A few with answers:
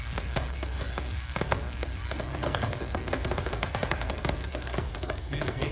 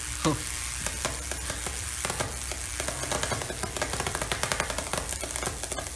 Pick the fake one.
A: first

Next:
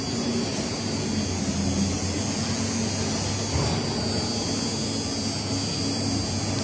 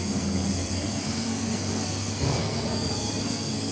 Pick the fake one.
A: second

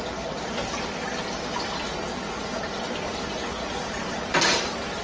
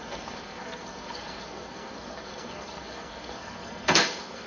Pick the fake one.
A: second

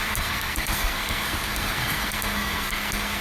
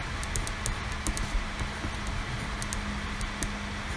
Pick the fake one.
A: first